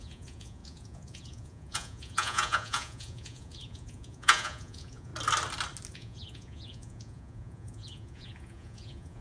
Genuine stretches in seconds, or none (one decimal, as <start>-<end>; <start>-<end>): 5.1-5.9